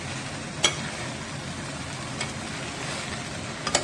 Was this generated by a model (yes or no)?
no